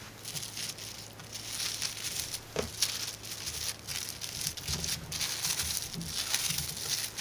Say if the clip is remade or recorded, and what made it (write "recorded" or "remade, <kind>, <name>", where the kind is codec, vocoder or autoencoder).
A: recorded